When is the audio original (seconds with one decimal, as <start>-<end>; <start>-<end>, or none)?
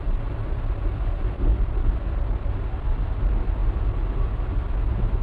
0.0-5.2